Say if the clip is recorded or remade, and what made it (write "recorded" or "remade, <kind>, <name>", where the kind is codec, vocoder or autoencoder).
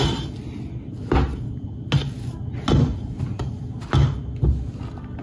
recorded